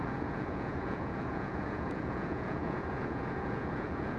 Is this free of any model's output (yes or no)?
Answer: no